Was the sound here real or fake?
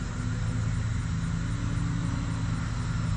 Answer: real